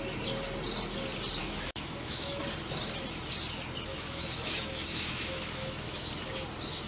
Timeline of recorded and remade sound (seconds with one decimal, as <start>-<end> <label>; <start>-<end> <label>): 0.0-1.4 recorded; 1.4-2.4 remade; 2.4-3.9 recorded; 3.9-6.1 remade; 6.1-6.9 recorded